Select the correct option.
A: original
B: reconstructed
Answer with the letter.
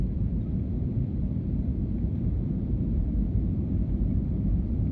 B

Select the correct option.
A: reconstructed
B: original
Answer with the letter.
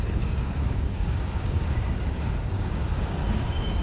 A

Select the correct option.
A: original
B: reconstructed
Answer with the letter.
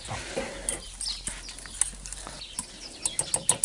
A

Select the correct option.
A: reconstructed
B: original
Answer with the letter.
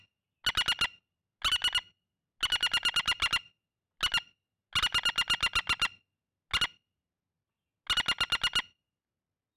B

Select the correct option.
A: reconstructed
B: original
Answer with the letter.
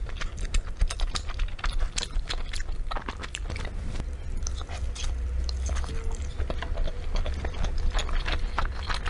B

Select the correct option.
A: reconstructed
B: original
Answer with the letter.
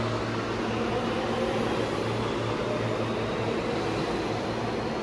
B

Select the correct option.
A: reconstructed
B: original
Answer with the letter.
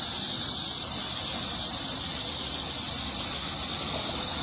B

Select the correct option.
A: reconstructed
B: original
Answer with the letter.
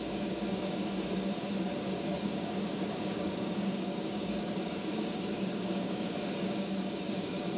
A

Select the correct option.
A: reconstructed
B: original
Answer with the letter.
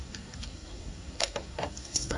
A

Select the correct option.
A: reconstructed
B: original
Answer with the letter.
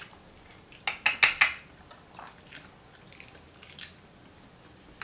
B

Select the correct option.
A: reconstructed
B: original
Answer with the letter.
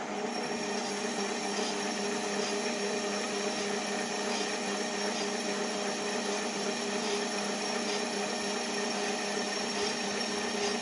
B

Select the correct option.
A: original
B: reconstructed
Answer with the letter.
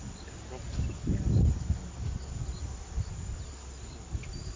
A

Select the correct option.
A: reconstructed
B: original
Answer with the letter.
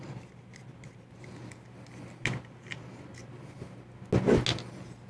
B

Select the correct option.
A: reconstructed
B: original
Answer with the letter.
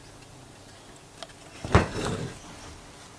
B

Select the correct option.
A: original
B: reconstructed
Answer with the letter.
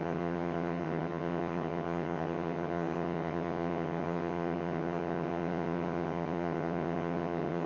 B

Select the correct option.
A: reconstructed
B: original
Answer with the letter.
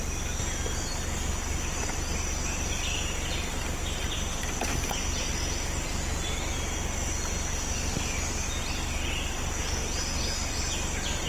B